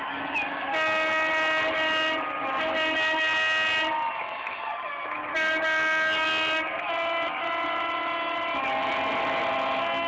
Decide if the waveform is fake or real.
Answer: real